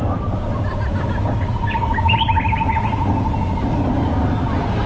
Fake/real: real